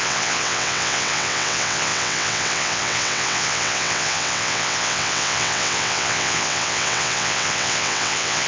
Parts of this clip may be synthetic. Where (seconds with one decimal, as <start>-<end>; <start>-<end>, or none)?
0.0-8.5